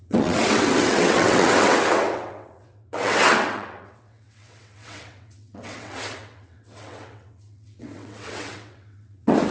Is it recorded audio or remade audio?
remade